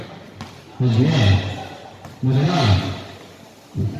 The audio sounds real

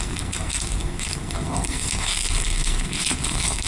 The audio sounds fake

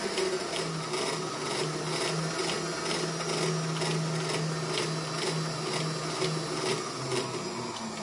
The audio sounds real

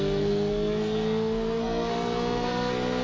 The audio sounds fake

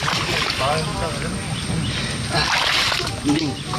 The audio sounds real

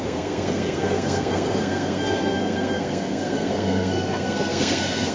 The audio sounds fake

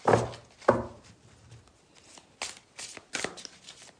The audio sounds real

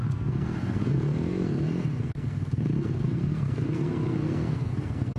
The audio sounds fake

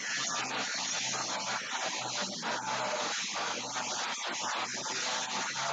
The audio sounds real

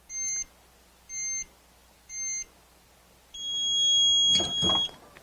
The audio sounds real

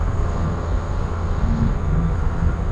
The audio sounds fake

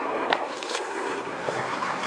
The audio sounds fake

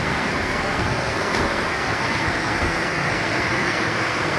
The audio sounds fake